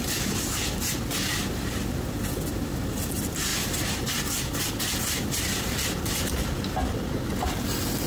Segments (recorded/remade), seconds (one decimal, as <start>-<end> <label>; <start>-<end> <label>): 0.0-3.5 recorded; 3.5-7.1 remade; 7.1-8.1 recorded